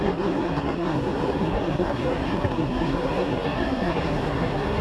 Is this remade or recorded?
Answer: remade